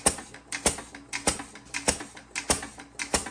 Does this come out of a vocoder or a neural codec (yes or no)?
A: no